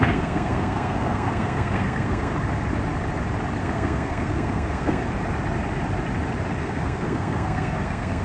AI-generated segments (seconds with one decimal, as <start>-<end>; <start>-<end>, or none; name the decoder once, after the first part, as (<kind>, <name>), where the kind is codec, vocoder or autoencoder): 0.0-2.3 (codec, SNAC); 3.6-5.0; 6.6-8.2